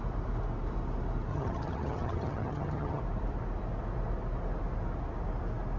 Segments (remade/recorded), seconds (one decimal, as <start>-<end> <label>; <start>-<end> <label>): 0.0-1.3 recorded; 1.3-3.0 remade; 3.0-5.8 recorded